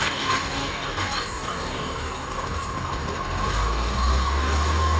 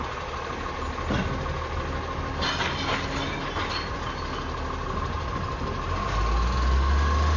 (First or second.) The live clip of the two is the second